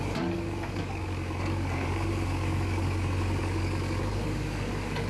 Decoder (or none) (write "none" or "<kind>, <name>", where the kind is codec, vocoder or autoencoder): codec, DAC